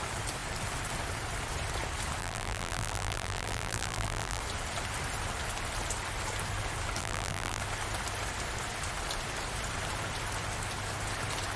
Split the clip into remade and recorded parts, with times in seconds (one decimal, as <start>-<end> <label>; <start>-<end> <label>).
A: 0.0-2.2 recorded; 2.2-4.4 remade; 4.4-7.0 recorded; 7.0-7.6 remade; 7.6-11.6 recorded